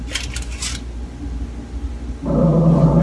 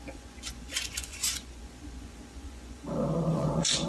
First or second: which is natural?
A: first